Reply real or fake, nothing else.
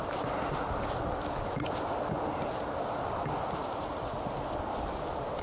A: real